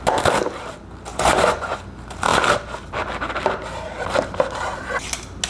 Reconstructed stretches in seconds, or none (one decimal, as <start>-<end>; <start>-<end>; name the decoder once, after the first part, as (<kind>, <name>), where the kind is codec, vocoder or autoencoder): 1.1-1.8 (vocoder, Vocos)